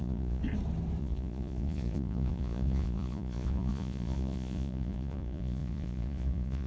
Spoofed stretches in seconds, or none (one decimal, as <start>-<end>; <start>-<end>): 0.0-0.4; 1.0-6.7